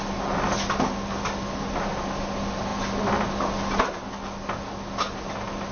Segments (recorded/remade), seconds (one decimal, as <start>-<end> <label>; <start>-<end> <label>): 0.0-5.7 recorded